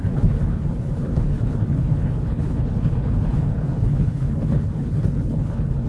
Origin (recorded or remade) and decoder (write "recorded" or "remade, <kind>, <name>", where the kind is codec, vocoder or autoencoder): remade, codec, HILCodec